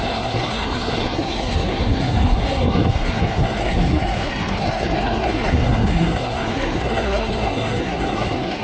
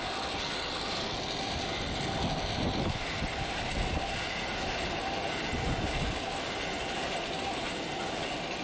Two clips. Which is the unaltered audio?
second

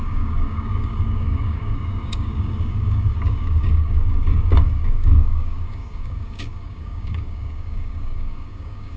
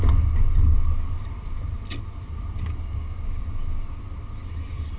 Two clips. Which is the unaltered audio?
second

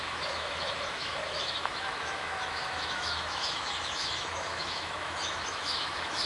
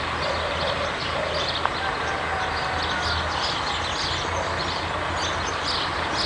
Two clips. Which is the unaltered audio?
second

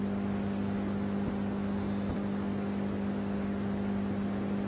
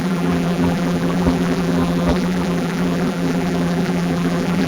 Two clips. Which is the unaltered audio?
first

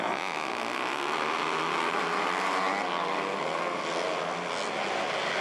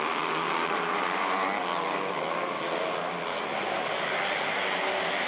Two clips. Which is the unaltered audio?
first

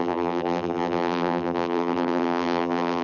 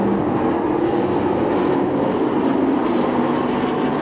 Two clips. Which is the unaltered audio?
second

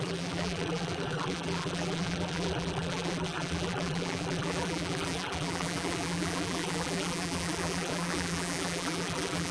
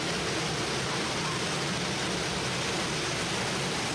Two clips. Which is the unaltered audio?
second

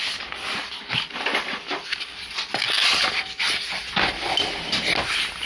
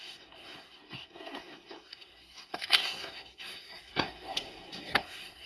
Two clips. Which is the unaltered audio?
first